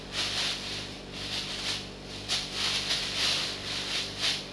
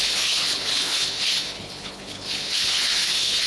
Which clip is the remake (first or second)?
second